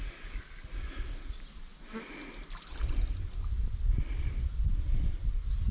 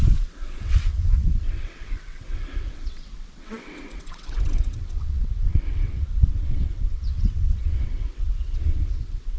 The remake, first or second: second